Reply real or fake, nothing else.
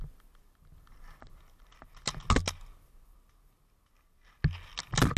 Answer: real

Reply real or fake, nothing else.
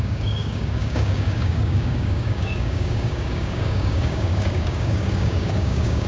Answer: fake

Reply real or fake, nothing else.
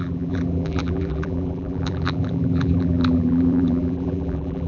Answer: fake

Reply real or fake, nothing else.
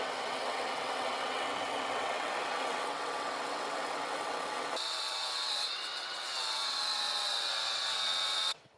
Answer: fake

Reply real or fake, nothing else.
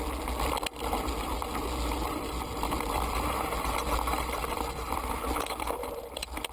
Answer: real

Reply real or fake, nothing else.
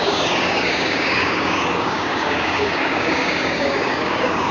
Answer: fake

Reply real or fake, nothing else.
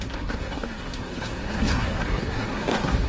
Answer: fake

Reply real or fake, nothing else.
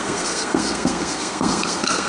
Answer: fake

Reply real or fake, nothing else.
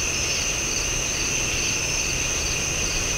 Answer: real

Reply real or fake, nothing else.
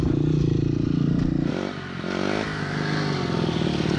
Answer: real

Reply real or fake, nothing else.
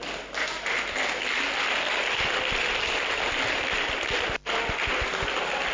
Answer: real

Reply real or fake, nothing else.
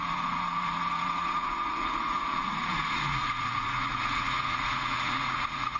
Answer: fake